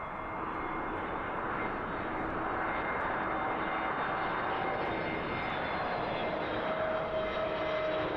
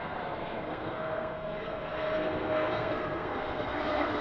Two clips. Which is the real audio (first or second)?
first